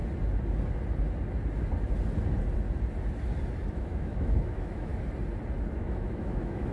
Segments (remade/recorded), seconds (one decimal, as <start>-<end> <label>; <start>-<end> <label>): 0.0-3.7 recorded; 3.7-4.9 remade; 4.9-5.7 recorded; 5.7-6.7 remade